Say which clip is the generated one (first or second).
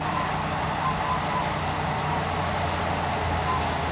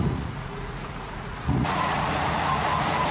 second